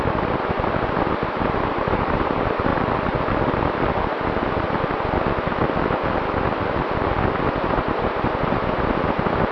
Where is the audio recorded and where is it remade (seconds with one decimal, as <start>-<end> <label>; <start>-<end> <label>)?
0.0-2.7 remade; 2.7-7.6 recorded; 7.6-9.5 remade